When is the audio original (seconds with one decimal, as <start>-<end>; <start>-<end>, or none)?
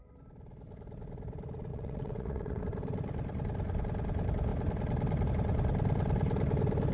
0.0-1.7; 2.6-6.9